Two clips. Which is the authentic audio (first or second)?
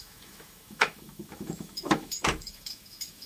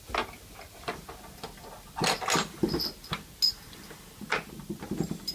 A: second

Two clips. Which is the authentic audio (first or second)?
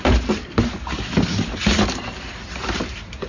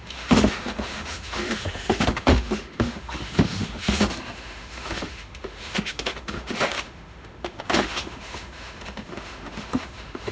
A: first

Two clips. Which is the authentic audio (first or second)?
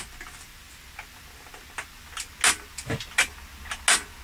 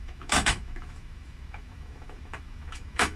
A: first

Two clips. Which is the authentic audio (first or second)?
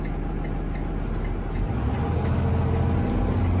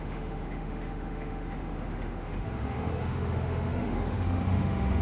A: first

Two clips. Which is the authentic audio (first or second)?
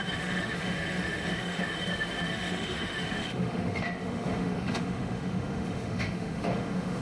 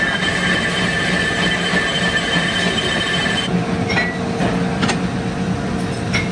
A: second